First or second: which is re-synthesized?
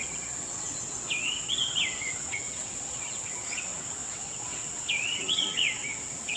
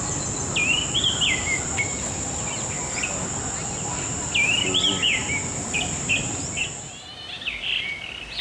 first